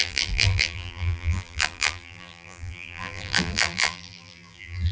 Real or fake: fake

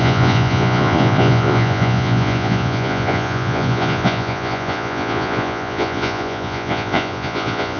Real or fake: fake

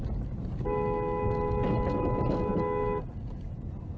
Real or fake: real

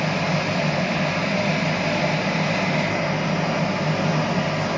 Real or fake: real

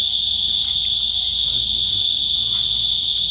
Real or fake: real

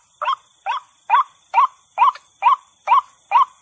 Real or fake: real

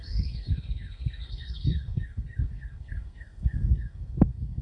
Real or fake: fake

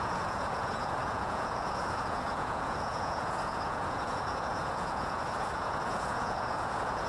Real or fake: fake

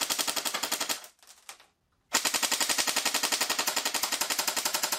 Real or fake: real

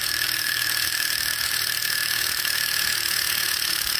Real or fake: fake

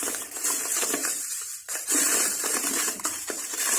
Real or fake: fake